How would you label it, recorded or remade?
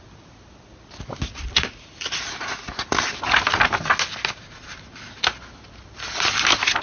recorded